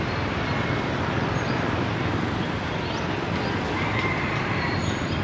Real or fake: fake